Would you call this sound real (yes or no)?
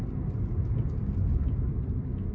no